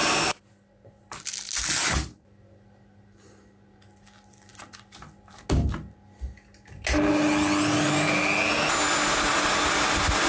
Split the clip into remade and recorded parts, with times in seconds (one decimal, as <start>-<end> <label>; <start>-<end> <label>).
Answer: 0.0-10.3 recorded